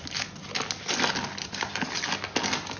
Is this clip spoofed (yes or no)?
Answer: no